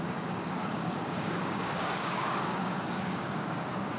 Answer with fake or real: fake